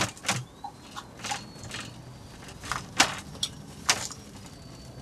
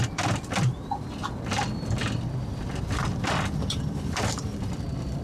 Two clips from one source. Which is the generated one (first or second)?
second